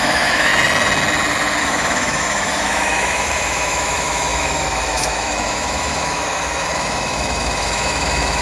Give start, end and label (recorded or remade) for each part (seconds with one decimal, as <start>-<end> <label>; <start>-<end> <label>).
0.0-0.5 remade; 0.5-1.6 recorded; 1.6-8.4 remade